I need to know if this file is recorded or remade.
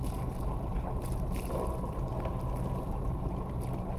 recorded